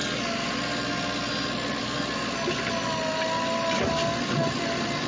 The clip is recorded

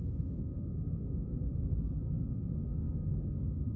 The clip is remade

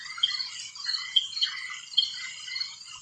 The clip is recorded